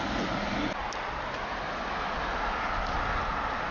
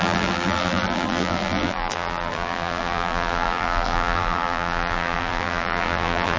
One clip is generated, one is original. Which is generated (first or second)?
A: second